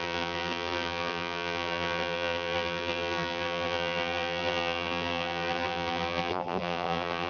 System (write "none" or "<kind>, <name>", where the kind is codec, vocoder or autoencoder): vocoder, BigVGAN v2